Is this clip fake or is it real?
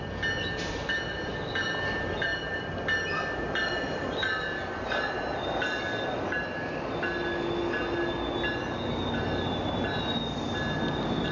real